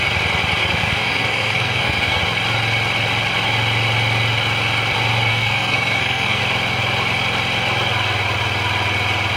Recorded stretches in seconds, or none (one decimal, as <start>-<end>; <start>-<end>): 0.0-0.6; 2.2-5.3; 6.4-9.4